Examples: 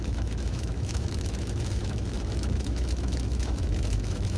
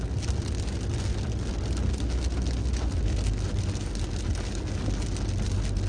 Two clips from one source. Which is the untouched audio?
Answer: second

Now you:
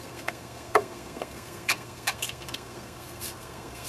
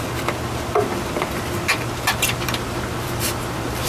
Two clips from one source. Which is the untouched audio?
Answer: second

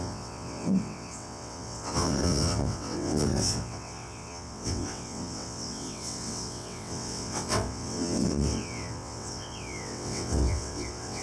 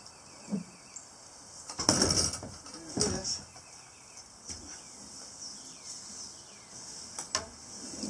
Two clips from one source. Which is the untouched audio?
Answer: second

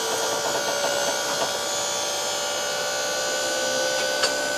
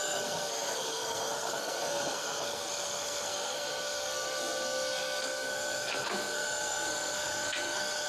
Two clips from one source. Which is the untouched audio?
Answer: first